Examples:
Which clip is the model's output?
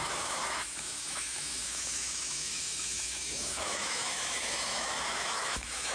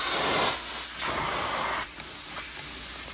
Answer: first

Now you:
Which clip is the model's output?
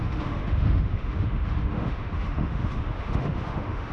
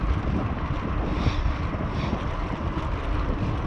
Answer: first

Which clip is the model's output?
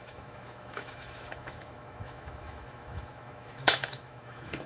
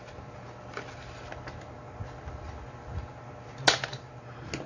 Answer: first